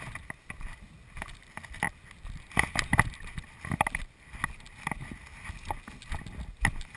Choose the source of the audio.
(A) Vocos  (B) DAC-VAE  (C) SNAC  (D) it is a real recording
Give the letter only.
D